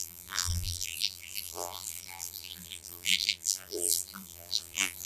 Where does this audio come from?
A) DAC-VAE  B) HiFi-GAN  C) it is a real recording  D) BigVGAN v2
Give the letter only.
D